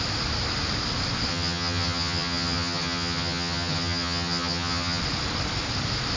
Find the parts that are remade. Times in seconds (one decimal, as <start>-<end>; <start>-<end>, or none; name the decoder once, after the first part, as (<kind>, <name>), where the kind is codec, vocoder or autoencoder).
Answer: 1.3-5.0 (vocoder, HiFi-GAN)